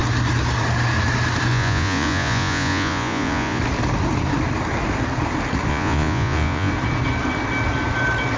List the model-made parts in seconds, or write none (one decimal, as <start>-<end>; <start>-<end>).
1.5-3.6; 5.7-6.7